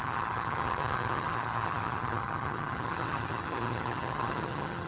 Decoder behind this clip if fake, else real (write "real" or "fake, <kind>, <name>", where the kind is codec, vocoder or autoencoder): fake, vocoder, HiFi-GAN